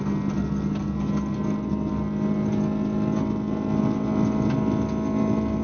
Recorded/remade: recorded